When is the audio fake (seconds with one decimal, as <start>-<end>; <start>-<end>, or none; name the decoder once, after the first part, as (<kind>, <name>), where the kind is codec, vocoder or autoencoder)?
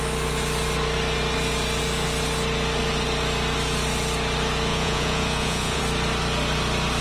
4.7-5.8 (vocoder, Vocos)